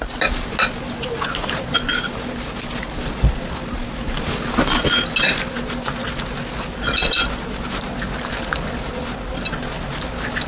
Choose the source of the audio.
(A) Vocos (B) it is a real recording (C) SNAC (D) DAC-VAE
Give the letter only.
B